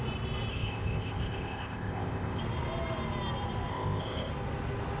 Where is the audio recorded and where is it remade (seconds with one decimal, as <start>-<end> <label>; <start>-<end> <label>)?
0.0-0.5 recorded; 0.5-2.4 remade; 2.4-3.7 recorded; 3.7-4.3 remade; 4.3-5.0 recorded